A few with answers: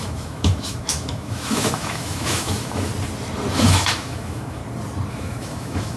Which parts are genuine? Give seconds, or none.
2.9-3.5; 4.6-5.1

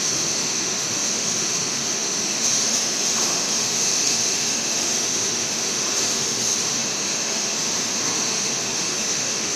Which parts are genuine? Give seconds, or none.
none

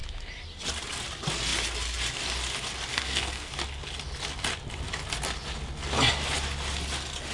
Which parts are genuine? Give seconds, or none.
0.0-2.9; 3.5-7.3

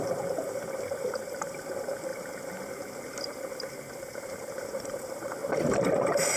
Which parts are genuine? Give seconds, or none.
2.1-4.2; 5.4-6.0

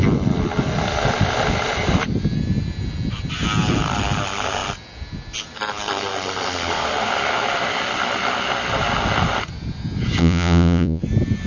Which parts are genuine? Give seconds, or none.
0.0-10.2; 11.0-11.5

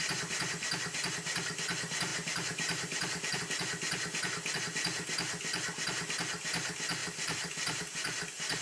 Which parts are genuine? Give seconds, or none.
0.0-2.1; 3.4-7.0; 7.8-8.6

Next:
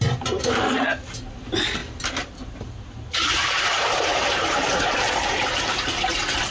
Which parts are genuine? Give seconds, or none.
0.0-1.8; 5.7-6.5